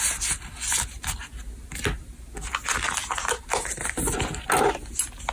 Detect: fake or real real